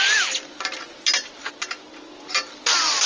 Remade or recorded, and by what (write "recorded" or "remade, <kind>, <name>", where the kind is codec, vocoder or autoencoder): recorded